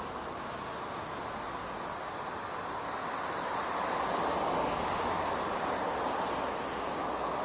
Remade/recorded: recorded